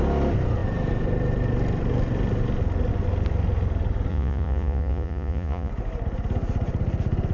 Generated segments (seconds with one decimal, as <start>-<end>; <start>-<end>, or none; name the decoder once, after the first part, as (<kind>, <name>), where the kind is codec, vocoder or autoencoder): 4.1-5.7 (vocoder, Vocos)